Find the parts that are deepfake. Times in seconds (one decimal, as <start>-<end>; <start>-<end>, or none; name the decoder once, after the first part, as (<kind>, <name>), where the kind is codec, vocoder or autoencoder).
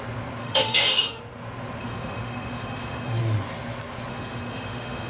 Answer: 0.4-1.2 (autoencoder, DAC-VAE); 1.8-3.2; 4.1-5.1